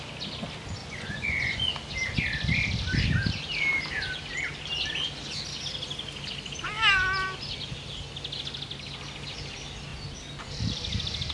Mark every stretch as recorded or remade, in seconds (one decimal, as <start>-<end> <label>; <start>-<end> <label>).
0.0-0.8 recorded; 0.8-1.7 remade; 1.7-11.3 recorded